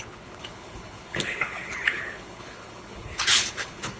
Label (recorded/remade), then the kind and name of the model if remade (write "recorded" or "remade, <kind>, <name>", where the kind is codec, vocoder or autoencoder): remade, codec, HILCodec